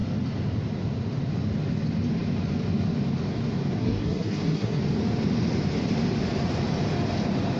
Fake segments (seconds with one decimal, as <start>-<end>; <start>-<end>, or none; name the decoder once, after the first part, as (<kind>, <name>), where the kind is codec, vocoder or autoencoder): 3.8-4.8 (codec, SNAC)